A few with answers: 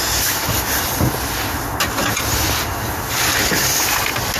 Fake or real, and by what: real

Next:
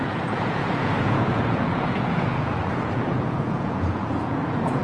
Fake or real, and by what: fake, vocoder, Vocos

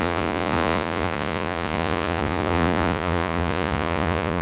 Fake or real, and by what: fake, vocoder, Vocos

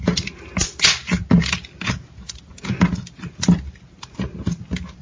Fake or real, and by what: real